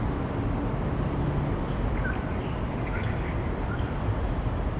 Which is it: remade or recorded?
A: recorded